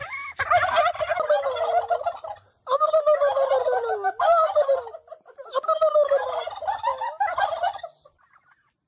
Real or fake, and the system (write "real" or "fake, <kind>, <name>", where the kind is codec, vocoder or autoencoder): real